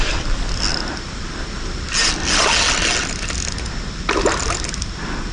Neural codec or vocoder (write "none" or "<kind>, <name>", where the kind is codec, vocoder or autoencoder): none